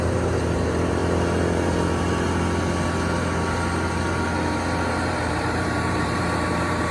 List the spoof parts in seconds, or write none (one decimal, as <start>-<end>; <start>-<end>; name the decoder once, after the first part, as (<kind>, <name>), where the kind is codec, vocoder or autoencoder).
0.0-1.0 (vocoder, BigVGAN v2); 5.1-6.9